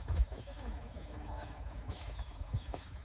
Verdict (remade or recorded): remade